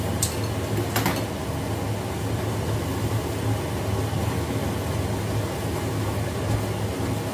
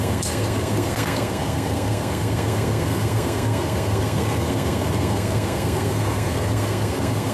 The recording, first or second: first